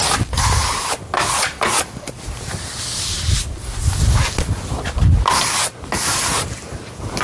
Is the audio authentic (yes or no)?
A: yes